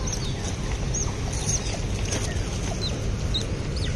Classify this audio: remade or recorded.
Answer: recorded